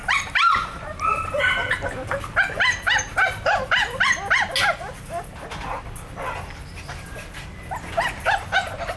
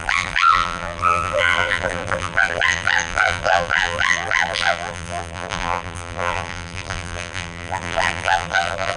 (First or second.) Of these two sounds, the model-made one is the second